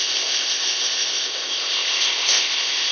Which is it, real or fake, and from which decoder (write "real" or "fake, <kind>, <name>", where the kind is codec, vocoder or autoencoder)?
fake, codec, ZipCodec